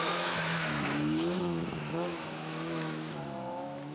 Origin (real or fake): fake